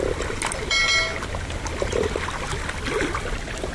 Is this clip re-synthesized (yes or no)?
no